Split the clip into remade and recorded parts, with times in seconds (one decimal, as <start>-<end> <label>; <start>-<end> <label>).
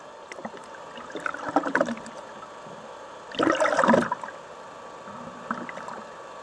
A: 0.0-6.4 recorded